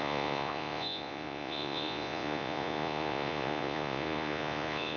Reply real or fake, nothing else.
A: fake